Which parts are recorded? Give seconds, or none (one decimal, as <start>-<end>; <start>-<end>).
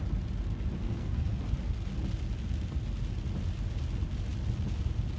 0.0-0.8; 1.4-5.2